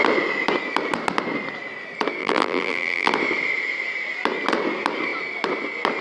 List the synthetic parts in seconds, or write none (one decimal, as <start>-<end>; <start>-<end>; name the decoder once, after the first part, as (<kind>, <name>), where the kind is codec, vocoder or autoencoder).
2.2-3.1 (vocoder, BigVGAN v2)